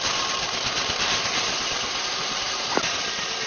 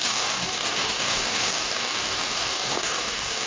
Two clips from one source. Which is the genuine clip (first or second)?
first